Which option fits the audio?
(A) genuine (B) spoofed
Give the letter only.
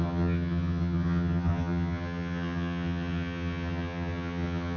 B